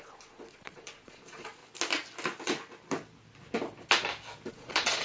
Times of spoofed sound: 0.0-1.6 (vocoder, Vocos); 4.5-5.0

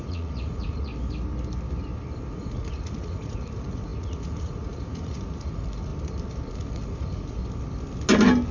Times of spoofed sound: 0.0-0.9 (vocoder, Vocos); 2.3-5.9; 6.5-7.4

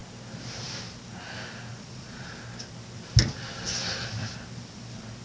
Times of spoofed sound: 1.7-2.3 (vocoder, Vocos)

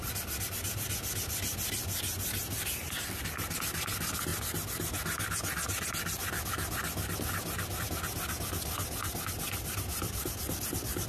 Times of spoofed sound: none

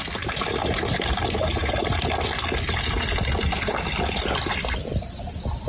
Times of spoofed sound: none

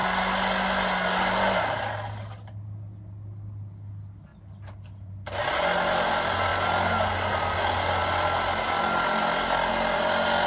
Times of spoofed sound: none

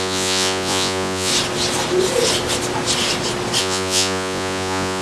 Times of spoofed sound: 0.0-1.3 (vocoder, Vocos); 3.6-5.0